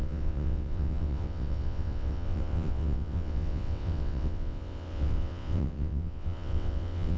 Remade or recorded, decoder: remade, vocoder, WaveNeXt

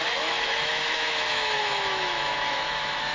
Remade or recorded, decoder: remade, autoencoder, DAC-VAE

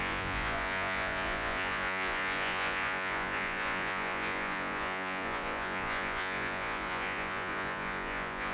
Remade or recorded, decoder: remade, vocoder, Vocos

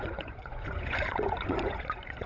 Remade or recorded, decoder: remade, vocoder, Vocos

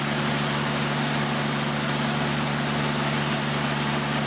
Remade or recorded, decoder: recorded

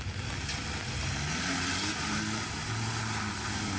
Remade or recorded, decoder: recorded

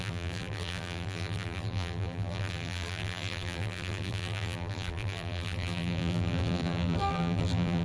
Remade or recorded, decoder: remade, vocoder, BigVGAN v2